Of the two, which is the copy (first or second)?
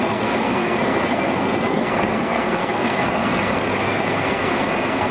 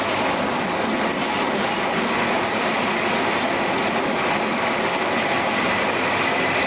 first